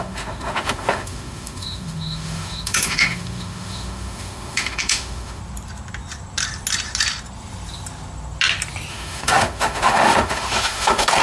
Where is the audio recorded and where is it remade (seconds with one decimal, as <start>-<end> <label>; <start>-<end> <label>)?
0.0-5.4 remade; 5.4-8.9 recorded; 8.9-11.2 remade

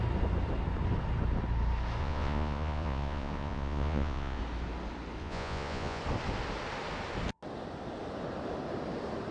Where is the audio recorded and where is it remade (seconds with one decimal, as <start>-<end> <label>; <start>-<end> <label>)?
0.0-2.0 recorded; 2.0-4.4 remade; 4.4-5.2 recorded; 5.2-6.0 remade; 6.0-9.3 recorded

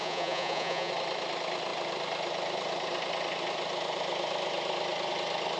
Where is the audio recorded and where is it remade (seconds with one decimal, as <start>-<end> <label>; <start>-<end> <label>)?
0.0-0.9 remade; 0.9-5.6 recorded

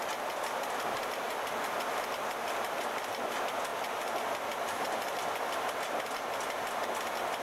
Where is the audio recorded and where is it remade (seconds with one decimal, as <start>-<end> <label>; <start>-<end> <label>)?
0.0-7.4 recorded

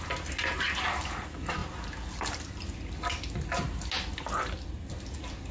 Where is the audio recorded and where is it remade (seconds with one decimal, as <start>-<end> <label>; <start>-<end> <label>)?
0.0-5.5 recorded

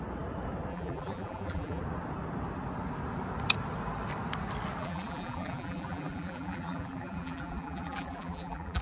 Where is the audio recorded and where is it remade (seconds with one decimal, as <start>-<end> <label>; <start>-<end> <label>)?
0.0-0.7 recorded; 0.7-1.8 remade; 1.8-4.8 recorded; 4.8-8.8 remade

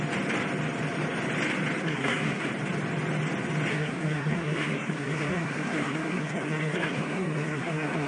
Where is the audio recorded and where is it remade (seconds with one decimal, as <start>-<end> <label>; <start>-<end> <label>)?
0.0-1.8 recorded; 1.8-2.5 remade; 2.5-3.7 recorded; 3.7-8.1 remade

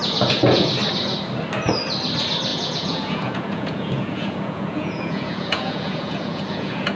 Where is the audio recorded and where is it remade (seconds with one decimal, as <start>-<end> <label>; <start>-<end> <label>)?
0.0-0.7 remade; 0.7-2.5 recorded; 2.5-7.0 remade